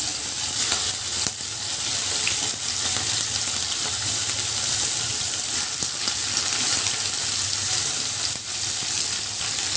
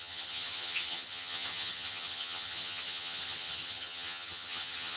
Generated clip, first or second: second